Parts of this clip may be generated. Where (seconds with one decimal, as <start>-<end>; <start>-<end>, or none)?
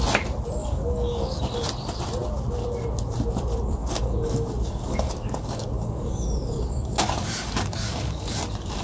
0.6-1.4; 3.8-8.4